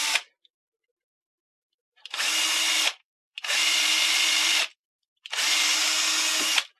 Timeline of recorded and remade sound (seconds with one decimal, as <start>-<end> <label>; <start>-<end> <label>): 0.0-1.5 recorded; 1.5-5.6 remade; 5.6-6.8 recorded